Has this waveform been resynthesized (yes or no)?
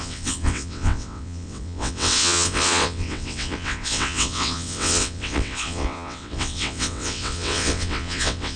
yes